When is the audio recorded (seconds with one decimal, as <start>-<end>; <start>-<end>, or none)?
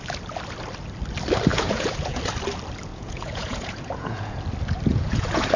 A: 0.0-1.5; 2.2-2.9; 4.4-4.9